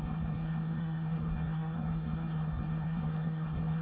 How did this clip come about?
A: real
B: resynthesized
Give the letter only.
B